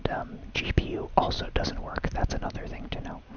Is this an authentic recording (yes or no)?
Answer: yes